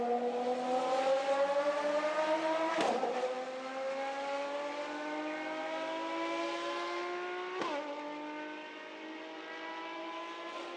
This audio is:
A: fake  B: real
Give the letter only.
B